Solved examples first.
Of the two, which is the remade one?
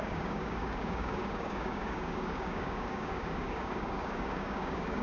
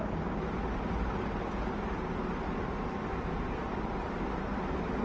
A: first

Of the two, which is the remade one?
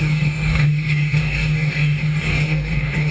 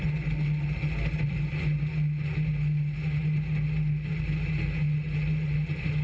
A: first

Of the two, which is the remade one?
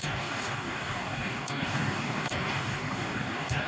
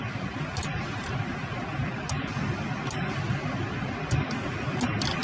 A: first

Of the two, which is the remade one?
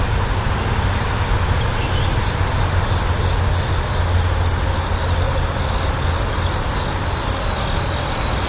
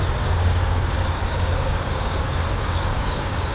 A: second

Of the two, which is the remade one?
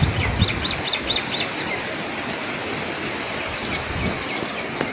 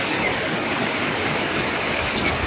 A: second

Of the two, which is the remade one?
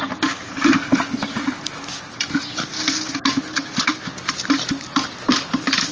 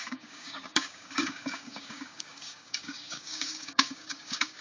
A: second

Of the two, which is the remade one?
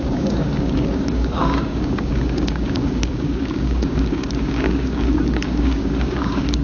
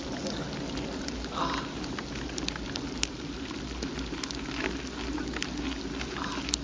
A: first